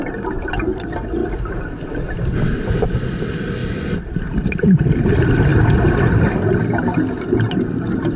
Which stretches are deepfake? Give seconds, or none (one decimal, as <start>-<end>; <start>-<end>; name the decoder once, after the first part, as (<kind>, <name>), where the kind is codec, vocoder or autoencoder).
3.6-5.1 (vocoder, BigVGAN v2)